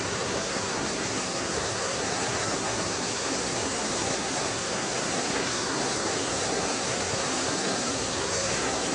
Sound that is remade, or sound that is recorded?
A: remade